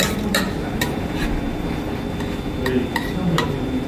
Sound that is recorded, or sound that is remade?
recorded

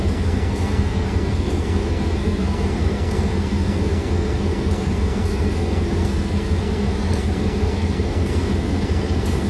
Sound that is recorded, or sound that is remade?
remade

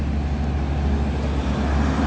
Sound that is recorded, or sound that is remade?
recorded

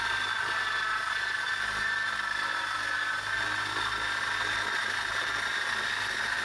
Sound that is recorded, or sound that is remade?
recorded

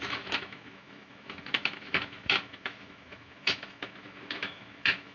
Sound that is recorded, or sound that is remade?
remade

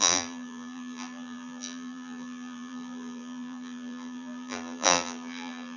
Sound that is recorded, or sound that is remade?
remade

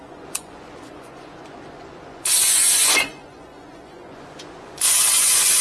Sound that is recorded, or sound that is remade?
remade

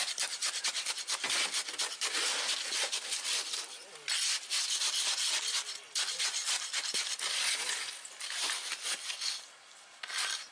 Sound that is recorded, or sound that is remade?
recorded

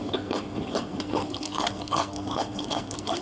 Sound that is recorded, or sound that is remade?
remade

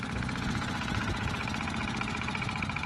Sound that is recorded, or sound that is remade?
remade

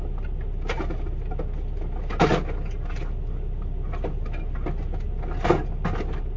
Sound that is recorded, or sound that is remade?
recorded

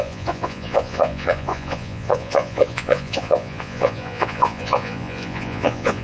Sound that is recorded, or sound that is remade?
remade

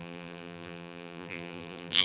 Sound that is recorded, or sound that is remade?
remade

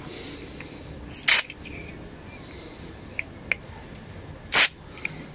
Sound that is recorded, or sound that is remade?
recorded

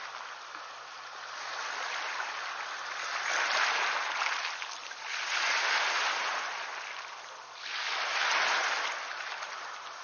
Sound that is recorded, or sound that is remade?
recorded